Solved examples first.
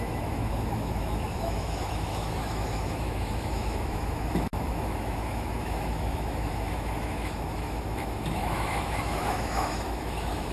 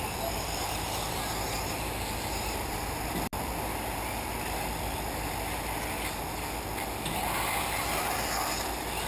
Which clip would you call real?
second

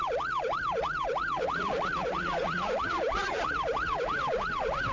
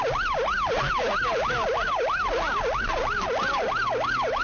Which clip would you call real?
second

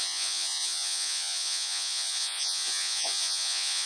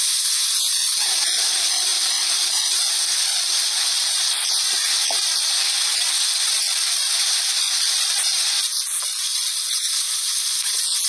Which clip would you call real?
second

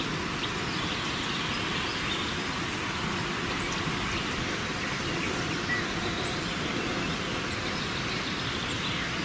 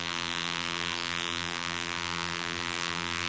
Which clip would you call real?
first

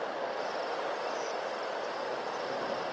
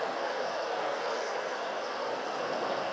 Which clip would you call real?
first